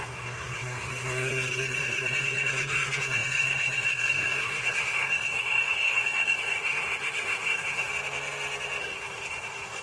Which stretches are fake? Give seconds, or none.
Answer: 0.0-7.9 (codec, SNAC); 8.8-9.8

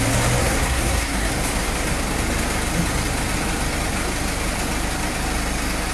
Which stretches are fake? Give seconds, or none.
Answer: 0.4-1.3 (codec, SNAC)

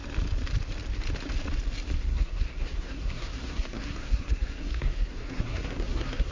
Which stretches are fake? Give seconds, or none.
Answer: 2.1-6.3 (codec, SNAC)

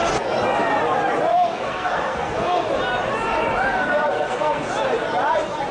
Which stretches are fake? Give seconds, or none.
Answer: 1.3-2.7 (codec, SNAC); 3.7-4.7